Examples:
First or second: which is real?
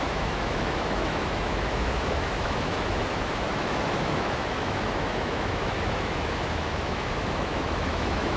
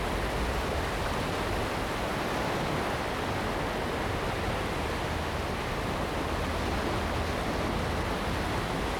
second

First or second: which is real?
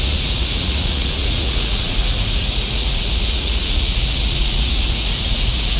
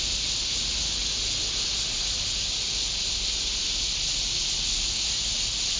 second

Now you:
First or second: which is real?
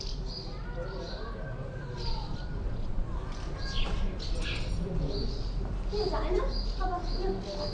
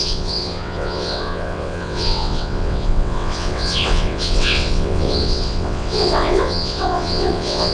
first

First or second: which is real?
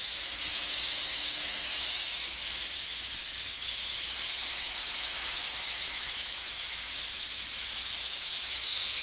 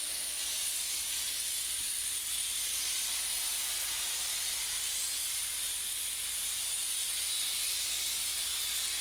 second